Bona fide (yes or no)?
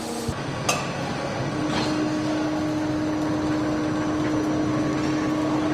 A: yes